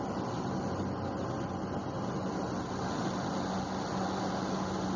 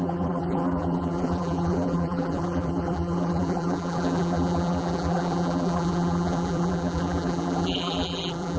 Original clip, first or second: first